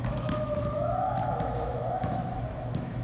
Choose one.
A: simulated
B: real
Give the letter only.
A